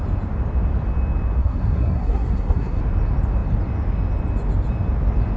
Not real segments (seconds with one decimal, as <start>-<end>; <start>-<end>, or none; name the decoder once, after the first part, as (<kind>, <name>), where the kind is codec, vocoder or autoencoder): 1.4-2.8 (codec, SNAC)